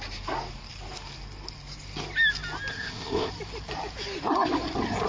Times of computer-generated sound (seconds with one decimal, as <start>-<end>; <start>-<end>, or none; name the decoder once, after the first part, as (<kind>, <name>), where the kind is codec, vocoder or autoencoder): 2.7-3.3 (codec, ZipCodec)